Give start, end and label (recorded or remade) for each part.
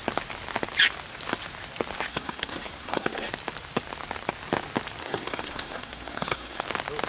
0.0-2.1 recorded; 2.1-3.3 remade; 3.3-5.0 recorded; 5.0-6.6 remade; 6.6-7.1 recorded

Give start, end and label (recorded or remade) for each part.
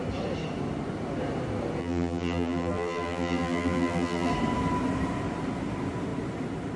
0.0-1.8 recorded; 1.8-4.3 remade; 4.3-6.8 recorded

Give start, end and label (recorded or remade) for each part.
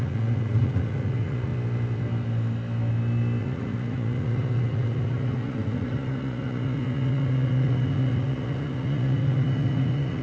0.0-1.5 remade; 1.5-3.4 recorded; 3.4-10.2 remade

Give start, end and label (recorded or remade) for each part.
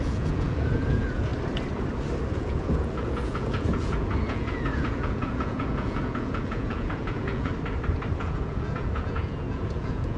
0.0-1.3 remade; 1.3-2.3 recorded; 2.3-7.5 remade; 7.5-8.2 recorded; 8.2-10.2 remade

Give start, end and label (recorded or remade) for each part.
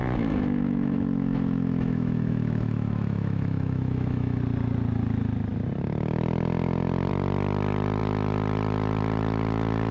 0.0-4.4 remade; 4.4-9.9 recorded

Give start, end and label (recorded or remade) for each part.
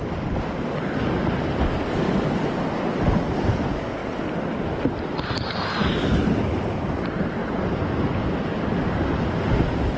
0.0-10.0 recorded